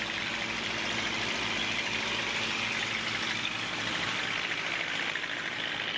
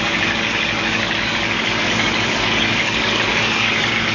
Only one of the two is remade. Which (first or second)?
second